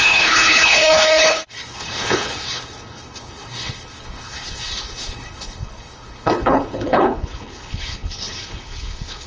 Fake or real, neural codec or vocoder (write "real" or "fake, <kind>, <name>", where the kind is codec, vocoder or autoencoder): fake, codec, HILCodec